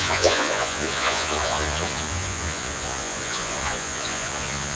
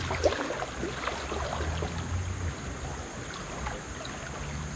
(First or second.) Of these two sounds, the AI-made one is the first